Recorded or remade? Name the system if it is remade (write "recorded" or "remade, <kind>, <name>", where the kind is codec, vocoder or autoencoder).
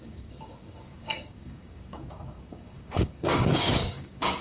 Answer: remade, codec, DAC